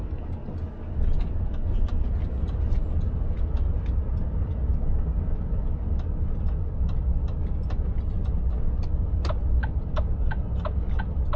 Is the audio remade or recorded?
recorded